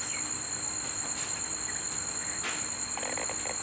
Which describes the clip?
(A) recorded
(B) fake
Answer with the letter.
A